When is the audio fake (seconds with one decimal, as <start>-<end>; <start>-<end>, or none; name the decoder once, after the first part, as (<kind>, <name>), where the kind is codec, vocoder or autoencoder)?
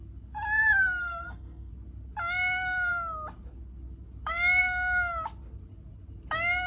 1.0-1.7 (codec, SNAC)